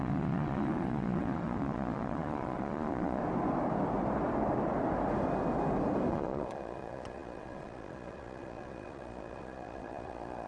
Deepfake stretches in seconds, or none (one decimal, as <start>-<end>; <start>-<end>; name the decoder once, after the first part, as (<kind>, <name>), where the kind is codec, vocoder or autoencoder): 0.0-3.2 (vocoder, Vocos); 6.1-10.5

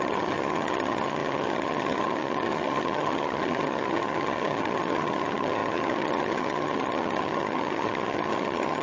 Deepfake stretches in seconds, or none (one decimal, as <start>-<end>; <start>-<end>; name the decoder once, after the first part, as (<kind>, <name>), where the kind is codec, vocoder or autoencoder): 0.0-8.8 (vocoder, HiFi-GAN)

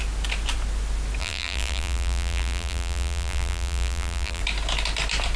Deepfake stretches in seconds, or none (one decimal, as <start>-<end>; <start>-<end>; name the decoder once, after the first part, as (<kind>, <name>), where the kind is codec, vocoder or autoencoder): 1.2-4.4 (vocoder, BigVGAN v2)

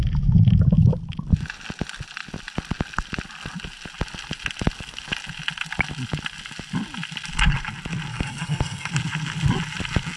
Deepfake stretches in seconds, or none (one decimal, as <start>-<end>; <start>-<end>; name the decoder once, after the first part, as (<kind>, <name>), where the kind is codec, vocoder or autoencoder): 8.1-8.9 (codec, SNAC)

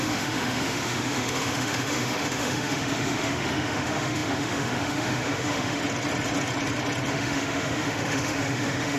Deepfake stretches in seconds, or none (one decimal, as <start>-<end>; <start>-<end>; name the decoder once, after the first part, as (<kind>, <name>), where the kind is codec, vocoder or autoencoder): 0.0-5.8 (autoencoder, DAC-VAE); 7.1-9.0